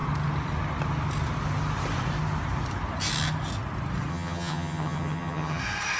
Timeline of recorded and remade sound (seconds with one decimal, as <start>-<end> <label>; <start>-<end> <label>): 0.0-4.1 recorded; 4.1-5.6 remade; 5.6-6.0 recorded